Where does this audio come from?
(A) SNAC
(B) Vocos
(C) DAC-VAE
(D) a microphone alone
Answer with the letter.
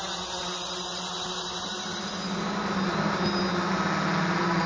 D